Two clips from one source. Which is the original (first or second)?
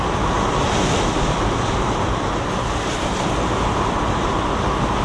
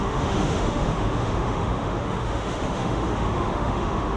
first